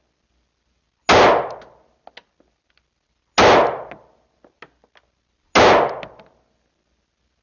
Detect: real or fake real